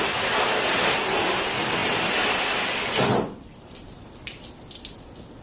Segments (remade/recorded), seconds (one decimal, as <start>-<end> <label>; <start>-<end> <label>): 0.0-1.8 recorded; 1.8-4.6 remade; 4.6-5.4 recorded